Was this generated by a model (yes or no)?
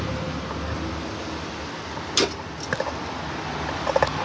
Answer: no